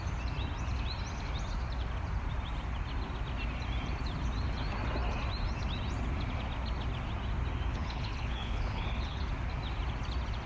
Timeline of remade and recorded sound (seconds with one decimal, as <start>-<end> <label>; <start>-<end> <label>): 0.0-7.7 recorded; 7.7-9.3 remade; 9.3-10.5 recorded